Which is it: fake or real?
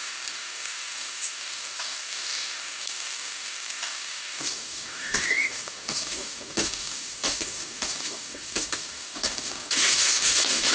fake